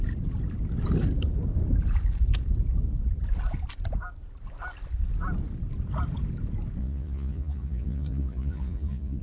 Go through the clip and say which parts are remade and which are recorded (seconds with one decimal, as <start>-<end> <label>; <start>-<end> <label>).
0.0-6.8 recorded; 6.8-9.2 remade